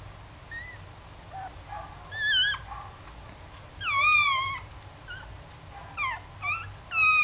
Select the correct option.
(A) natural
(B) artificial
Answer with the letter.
A